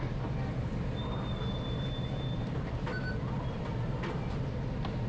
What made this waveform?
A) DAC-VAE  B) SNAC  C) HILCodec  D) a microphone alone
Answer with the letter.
D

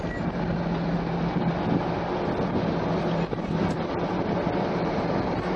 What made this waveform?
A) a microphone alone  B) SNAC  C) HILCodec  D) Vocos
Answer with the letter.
A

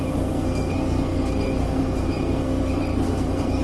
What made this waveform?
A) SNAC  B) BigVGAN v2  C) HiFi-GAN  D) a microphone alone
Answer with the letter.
A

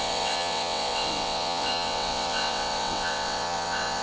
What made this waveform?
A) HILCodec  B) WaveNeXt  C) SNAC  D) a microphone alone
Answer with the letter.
B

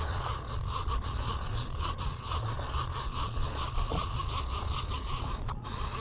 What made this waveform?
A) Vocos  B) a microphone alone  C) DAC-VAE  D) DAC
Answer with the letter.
A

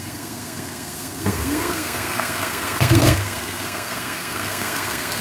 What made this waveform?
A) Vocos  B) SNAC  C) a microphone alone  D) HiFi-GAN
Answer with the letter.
B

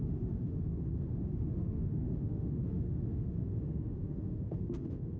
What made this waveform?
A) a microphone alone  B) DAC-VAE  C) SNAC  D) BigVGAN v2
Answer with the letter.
B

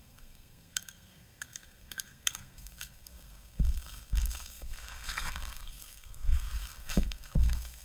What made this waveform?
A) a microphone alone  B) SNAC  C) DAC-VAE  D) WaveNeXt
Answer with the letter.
B